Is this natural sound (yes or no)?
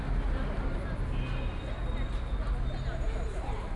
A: yes